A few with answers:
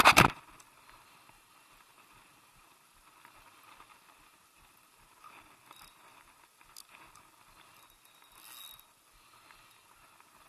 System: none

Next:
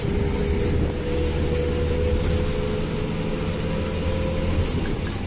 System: none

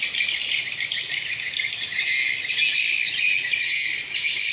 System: none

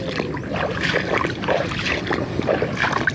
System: none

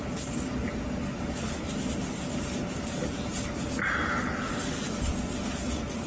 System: none